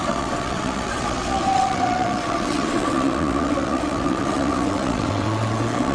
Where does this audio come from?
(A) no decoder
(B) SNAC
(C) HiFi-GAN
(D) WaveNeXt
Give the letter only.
D